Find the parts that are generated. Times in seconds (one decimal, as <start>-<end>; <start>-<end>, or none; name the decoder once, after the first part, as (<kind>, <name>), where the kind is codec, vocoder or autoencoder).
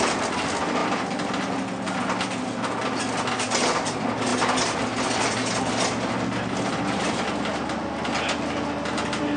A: none